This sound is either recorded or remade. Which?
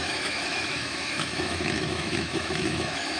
remade